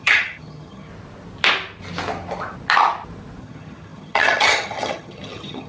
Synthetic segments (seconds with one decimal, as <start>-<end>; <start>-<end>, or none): 0.0-0.9; 3.4-5.7